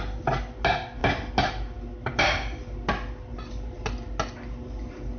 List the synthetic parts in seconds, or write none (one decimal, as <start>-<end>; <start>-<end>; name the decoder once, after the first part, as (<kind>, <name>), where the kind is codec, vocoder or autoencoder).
none